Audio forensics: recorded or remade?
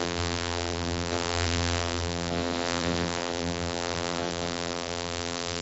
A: remade